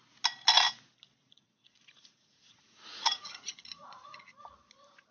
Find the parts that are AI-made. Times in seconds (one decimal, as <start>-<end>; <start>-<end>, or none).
1.2-4.2